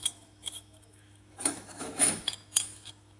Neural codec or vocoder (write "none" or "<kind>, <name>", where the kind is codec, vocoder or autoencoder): autoencoder, DAC-VAE